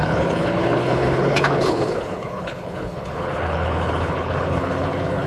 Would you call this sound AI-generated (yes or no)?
yes